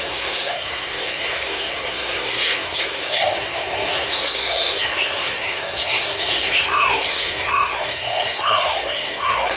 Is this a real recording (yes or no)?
no